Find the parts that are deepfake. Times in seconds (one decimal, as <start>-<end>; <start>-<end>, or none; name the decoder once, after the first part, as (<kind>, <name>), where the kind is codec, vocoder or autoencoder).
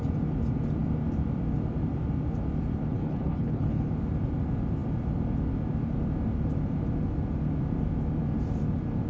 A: 2.8-3.9 (codec, HILCodec)